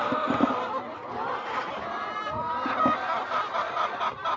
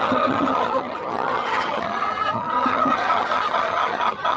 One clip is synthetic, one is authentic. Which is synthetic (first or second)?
second